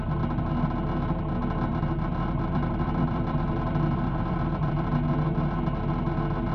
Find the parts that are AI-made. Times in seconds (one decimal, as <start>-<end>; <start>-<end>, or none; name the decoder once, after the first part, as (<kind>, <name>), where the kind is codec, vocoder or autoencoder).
1.7-5.6 (vocoder, BigVGAN v2)